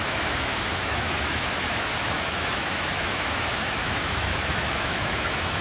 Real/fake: fake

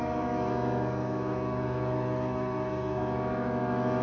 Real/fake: fake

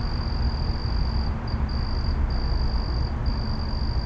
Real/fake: real